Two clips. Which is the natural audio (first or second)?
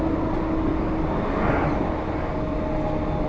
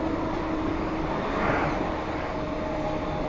first